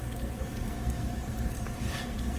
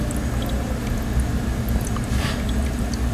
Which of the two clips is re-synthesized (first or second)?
first